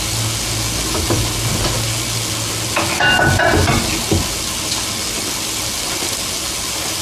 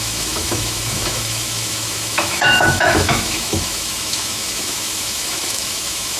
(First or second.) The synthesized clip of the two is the second